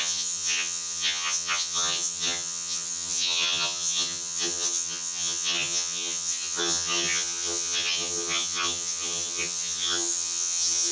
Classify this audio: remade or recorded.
remade